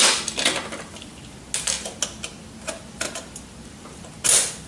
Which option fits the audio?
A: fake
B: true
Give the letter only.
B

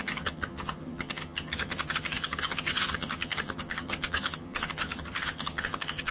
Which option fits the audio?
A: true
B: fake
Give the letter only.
B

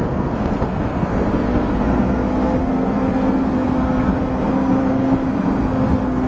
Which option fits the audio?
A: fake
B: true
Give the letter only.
A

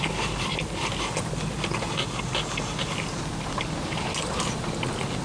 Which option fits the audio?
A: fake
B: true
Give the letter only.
B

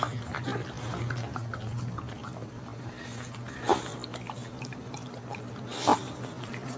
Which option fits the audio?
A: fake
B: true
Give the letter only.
B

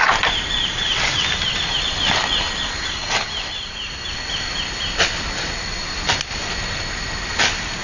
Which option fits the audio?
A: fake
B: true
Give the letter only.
B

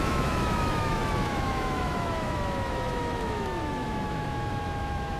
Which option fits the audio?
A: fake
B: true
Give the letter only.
A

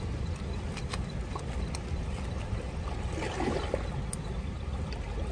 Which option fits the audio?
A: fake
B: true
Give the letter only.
B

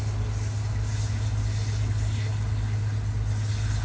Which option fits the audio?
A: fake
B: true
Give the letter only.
B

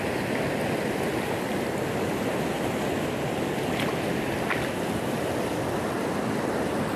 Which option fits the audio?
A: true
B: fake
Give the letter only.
A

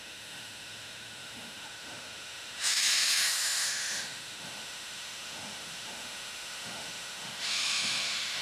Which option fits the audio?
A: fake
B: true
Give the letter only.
A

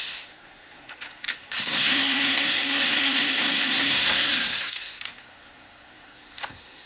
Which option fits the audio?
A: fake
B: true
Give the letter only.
A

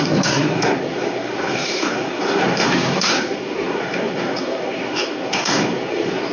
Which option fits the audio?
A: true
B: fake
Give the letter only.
B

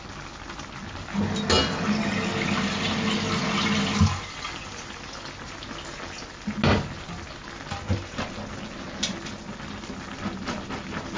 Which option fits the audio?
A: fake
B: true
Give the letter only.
B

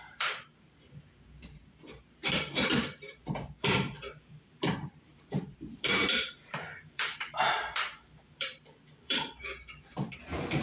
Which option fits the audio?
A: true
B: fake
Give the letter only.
B